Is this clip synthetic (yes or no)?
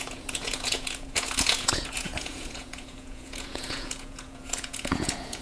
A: yes